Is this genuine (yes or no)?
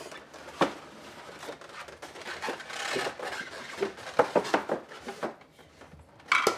yes